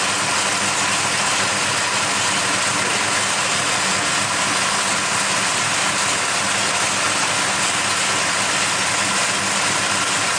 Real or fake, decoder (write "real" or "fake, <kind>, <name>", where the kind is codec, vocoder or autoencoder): real